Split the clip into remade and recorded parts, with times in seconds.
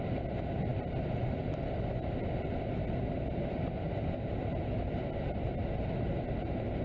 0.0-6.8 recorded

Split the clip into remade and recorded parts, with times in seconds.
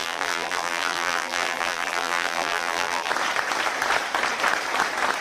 0.0-3.1 remade; 3.1-5.2 recorded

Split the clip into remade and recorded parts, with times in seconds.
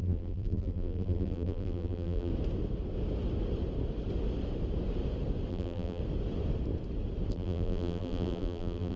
0.0-2.3 remade; 2.3-5.5 recorded; 5.5-6.0 remade; 6.0-7.3 recorded; 7.3-9.0 remade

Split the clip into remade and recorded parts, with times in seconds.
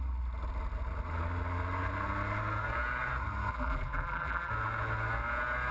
0.0-3.5 recorded; 3.5-4.5 remade; 4.5-5.7 recorded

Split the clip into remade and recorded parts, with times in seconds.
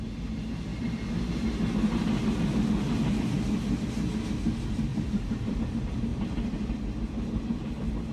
0.0-4.9 recorded; 4.9-5.6 remade; 5.6-6.1 recorded; 6.1-6.7 remade; 6.7-8.1 recorded